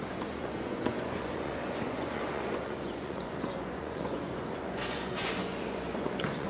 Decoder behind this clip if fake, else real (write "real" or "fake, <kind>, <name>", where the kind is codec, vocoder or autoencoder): fake, vocoder, Vocos